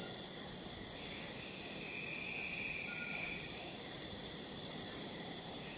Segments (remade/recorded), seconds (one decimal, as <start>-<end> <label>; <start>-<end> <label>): 0.0-2.5 recorded; 2.5-5.8 remade